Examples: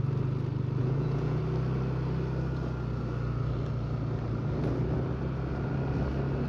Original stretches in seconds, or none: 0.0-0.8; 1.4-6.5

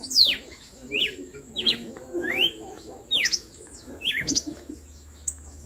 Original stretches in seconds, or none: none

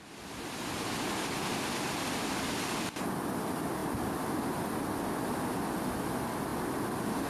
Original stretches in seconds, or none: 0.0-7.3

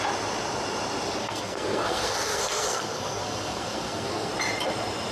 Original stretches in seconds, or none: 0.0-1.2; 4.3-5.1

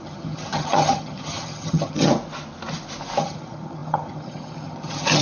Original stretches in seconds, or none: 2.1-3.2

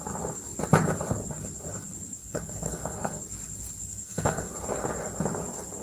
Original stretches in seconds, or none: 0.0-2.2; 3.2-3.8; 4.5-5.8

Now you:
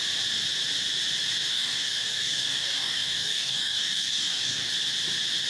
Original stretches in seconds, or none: 0.0-1.5; 4.7-5.5

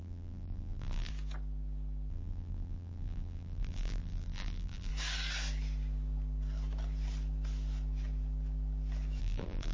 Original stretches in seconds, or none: 1.1-2.1; 4.9-9.2